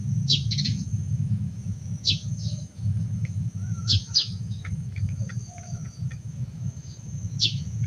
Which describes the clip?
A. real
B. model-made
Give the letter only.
B